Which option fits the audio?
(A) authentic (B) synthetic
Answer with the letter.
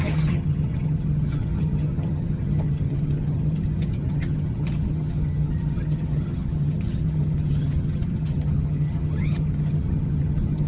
B